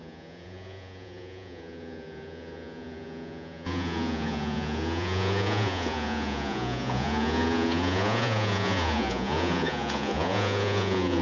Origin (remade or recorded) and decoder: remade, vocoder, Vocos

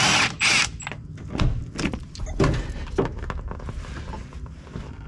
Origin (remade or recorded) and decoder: recorded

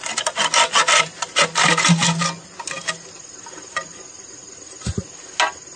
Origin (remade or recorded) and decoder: recorded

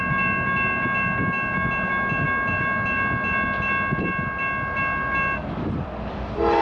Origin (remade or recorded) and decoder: recorded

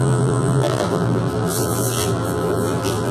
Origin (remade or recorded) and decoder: remade, vocoder, BigVGAN v2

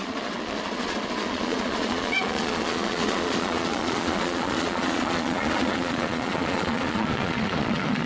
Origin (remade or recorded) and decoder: remade, vocoder, Vocos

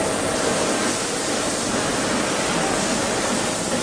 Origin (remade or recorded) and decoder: recorded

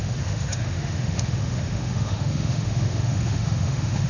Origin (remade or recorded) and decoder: remade, autoencoder, DAC-VAE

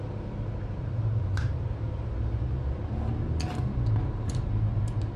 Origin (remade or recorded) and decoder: recorded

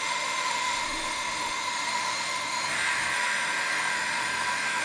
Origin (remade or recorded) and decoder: remade, autoencoder, DAC-VAE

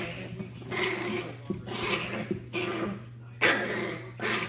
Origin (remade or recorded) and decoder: recorded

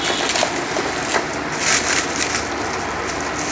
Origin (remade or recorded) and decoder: recorded